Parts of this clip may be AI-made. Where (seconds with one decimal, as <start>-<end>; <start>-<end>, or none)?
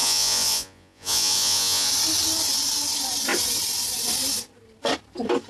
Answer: 0.0-1.9